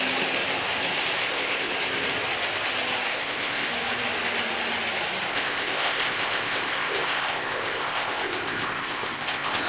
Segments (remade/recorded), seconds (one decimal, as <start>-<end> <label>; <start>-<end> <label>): 0.0-1.2 recorded; 1.2-1.7 remade; 1.7-3.1 recorded; 3.1-3.7 remade; 3.7-5.3 recorded; 5.3-9.7 remade